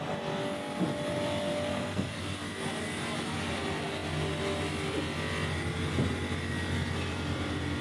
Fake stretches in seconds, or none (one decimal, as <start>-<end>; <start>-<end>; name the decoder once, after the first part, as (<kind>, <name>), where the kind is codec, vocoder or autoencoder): 1.7-2.2 (codec, SNAC)